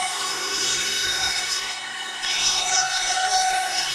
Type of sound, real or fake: fake